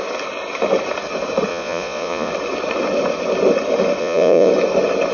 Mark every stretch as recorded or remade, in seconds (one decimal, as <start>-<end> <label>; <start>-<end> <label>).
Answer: 0.0-1.5 recorded; 1.5-2.3 remade; 2.3-4.0 recorded; 4.0-4.5 remade; 4.5-5.1 recorded